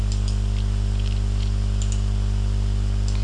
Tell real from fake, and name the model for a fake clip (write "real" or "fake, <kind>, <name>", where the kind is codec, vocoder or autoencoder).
real